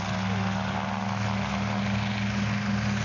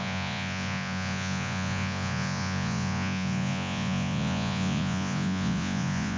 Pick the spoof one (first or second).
second